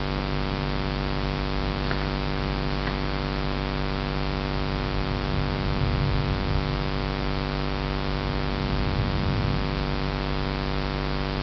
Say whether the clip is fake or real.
real